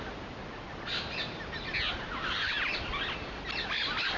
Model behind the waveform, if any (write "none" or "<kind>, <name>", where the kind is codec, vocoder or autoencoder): none